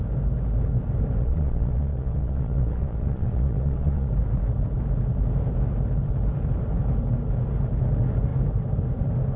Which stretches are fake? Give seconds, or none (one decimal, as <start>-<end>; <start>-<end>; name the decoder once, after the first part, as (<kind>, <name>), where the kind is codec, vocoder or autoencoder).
1.2-4.1 (vocoder, Vocos)